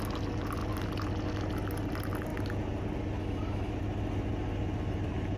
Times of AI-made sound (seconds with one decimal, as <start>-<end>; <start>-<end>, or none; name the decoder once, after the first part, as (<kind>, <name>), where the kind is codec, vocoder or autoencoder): 3.2-3.7 (autoencoder, DAC-VAE)